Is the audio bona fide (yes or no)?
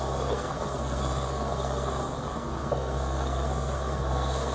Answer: no